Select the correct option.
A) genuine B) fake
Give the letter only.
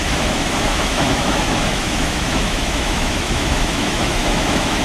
B